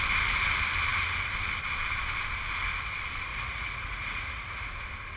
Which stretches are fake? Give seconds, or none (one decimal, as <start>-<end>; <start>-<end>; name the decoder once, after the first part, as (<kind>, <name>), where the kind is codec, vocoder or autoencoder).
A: 3.3-4.8 (vocoder, Vocos)